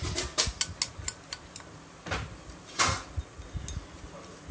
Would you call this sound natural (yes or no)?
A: yes